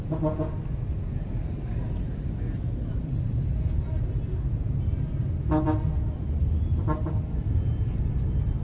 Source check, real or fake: real